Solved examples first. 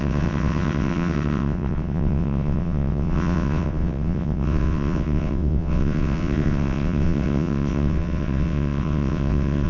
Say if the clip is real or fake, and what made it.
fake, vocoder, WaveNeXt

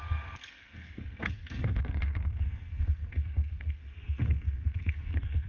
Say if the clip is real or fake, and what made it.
fake, codec, SNAC